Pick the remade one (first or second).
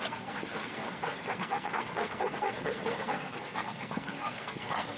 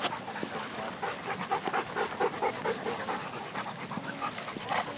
first